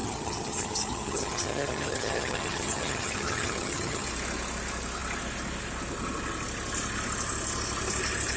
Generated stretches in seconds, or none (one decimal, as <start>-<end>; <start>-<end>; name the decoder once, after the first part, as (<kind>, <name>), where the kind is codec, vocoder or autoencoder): 0.0-4.1 (vocoder, HiFi-GAN)